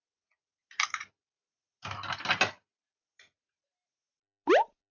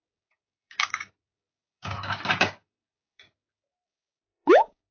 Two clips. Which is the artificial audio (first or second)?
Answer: second